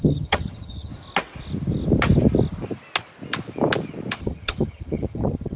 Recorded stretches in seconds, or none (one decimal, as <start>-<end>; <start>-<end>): 0.9-4.2